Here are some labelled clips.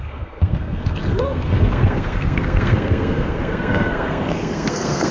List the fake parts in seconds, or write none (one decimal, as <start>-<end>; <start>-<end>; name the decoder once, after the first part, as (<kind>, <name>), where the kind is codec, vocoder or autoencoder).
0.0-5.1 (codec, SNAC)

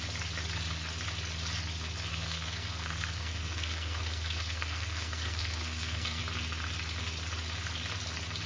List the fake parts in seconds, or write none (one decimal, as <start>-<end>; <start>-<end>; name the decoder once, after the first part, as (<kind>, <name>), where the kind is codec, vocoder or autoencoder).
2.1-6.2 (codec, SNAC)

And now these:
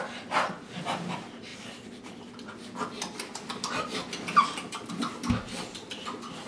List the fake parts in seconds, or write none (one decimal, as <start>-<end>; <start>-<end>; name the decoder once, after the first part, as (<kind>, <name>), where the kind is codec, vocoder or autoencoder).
none